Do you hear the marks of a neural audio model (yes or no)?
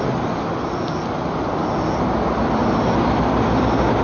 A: no